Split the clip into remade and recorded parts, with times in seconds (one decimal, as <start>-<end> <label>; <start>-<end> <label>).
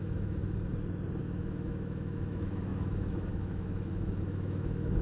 0.0-0.4 remade; 0.4-1.2 recorded; 1.2-5.0 remade